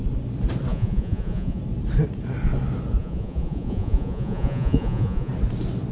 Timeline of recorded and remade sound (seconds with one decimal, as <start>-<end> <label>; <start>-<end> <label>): 0.0-0.7 recorded; 0.7-1.6 remade; 1.6-3.0 recorded; 3.0-5.3 remade; 5.3-5.9 recorded